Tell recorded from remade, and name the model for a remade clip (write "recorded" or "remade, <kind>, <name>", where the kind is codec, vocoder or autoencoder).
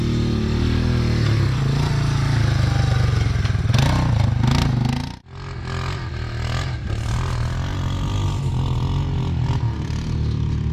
recorded